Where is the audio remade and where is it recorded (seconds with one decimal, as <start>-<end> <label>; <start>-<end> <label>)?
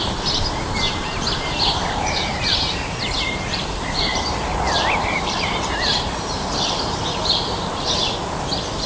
0.0-2.2 remade; 2.2-3.4 recorded; 3.4-8.0 remade; 8.0-8.9 recorded